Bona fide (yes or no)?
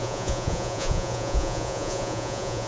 no